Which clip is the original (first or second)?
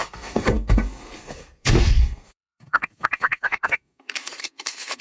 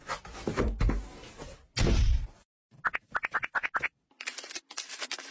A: second